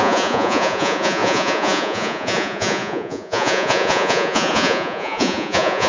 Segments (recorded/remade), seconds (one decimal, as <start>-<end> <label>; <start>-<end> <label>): 0.0-5.9 remade